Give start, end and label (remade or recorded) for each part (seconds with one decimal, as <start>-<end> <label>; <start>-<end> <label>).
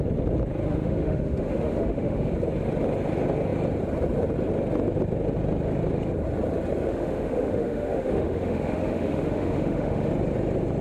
0.0-0.6 recorded; 0.6-2.3 remade; 2.3-6.9 recorded; 6.9-10.1 remade; 10.1-10.8 recorded